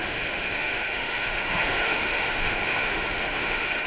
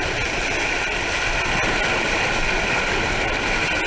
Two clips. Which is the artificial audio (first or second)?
first